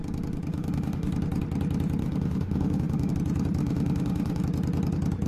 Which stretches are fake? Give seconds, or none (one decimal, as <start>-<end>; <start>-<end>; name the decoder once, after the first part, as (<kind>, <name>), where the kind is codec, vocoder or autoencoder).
0.5-1.1 (autoencoder, DAC-VAE); 2.0-3.1; 3.6-4.4